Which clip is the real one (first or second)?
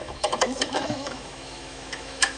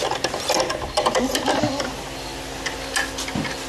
second